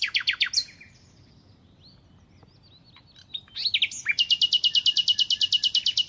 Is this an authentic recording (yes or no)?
yes